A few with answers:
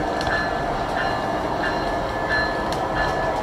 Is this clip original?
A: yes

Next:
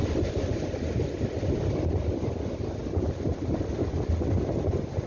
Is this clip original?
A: yes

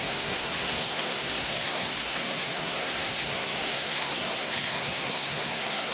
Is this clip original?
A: no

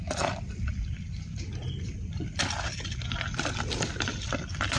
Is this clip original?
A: yes